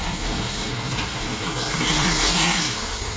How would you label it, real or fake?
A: fake